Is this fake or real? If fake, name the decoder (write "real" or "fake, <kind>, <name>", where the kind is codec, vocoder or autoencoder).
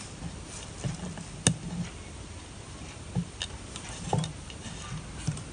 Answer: real